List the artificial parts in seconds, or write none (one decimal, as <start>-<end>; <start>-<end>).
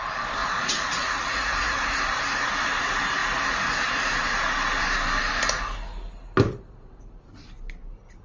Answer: 0.4-1.6